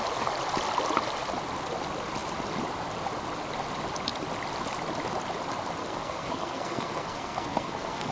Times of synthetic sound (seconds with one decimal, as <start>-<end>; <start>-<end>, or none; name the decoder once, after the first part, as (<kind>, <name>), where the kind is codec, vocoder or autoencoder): 5.8-8.1 (codec, SNAC)